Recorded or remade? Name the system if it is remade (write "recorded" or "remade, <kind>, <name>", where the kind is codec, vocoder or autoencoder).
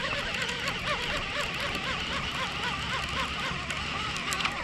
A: recorded